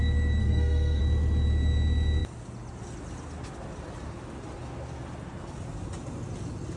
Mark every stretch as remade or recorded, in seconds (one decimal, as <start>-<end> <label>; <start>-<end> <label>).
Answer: 0.0-0.4 recorded; 0.4-1.0 remade; 1.0-6.8 recorded